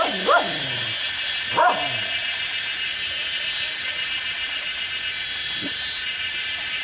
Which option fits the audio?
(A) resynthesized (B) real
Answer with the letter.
B